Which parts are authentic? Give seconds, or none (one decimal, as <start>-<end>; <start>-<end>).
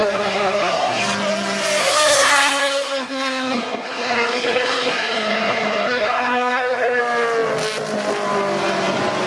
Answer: 1.0-1.8; 7.0-9.3